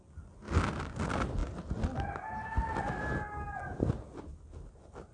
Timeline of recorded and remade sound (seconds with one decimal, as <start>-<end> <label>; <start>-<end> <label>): 0.0-5.1 recorded